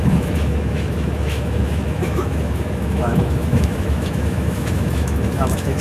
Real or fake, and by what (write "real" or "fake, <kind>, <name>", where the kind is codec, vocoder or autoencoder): fake, autoencoder, DAC-VAE